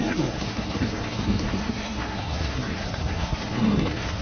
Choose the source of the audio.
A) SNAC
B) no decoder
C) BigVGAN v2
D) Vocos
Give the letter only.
A